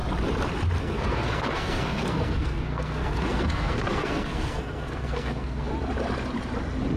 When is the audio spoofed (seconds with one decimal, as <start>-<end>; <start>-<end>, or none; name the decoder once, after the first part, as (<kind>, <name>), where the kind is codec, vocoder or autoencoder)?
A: 0.8-5.7 (codec, SNAC)